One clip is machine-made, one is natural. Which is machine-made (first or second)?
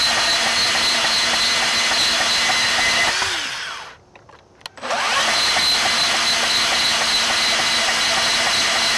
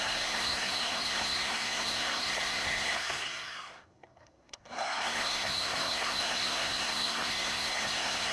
second